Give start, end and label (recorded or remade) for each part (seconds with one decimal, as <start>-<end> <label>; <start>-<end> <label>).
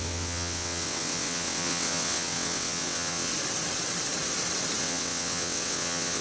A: 0.0-3.3 remade; 3.3-4.8 recorded; 4.8-6.2 remade